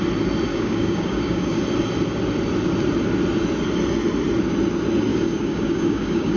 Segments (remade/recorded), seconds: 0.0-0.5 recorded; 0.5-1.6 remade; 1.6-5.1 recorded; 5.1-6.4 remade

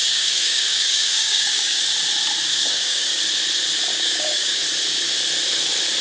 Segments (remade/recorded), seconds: 0.0-1.8 remade; 1.8-2.5 recorded; 2.5-3.2 remade; 3.2-3.9 recorded; 3.9-4.6 remade; 4.6-6.0 recorded

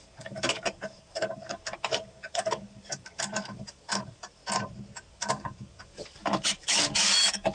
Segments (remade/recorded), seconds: 0.0-4.4 remade; 4.4-5.1 recorded; 5.1-7.5 remade

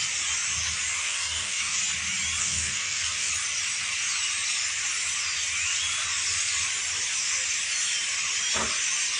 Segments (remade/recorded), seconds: 0.0-1.0 recorded; 1.0-1.8 remade; 1.8-2.4 recorded; 2.4-3.3 remade; 3.3-9.2 recorded

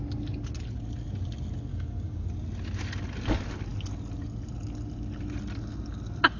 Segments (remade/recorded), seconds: 0.0-1.7 recorded; 1.7-2.3 remade; 2.3-6.4 recorded

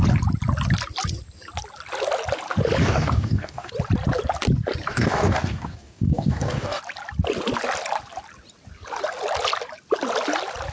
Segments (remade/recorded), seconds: 0.0-2.8 recorded; 2.8-3.7 remade; 3.7-4.9 recorded; 4.9-6.8 remade; 6.8-10.7 recorded

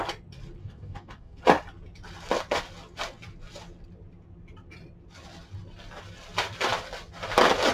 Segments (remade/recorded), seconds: 0.0-0.6 recorded; 0.6-1.4 remade; 1.4-7.7 recorded

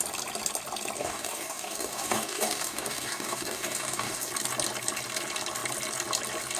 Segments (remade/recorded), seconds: 0.0-1.0 recorded; 1.0-4.3 remade; 4.3-6.6 recorded